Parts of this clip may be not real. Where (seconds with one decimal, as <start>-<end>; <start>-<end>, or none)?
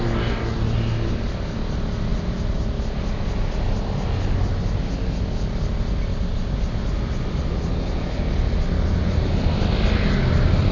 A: none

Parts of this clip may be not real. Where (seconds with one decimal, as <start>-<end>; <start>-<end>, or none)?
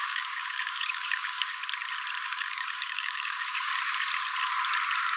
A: 0.0-1.6; 2.2-3.7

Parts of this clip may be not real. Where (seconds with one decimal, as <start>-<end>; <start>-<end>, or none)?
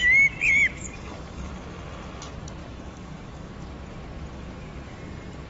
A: 0.8-1.5; 2.6-3.5